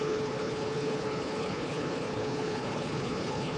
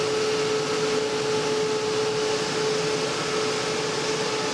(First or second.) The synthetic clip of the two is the first